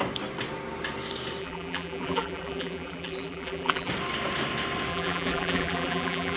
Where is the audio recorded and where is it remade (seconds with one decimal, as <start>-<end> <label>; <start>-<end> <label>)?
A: 0.0-1.4 recorded; 1.4-3.9 remade; 3.9-4.9 recorded; 4.9-6.4 remade